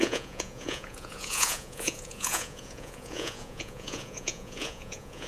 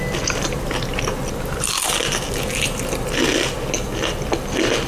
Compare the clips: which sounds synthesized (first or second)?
first